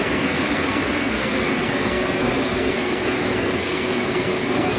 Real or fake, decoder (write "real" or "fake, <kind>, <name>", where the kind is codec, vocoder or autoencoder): fake, codec, SNAC